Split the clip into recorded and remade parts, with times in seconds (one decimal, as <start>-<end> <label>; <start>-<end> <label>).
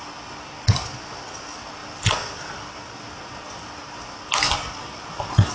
0.0-5.5 recorded